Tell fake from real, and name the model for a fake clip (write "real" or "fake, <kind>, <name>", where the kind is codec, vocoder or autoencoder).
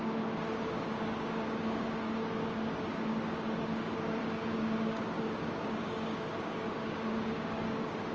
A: fake, codec, DAC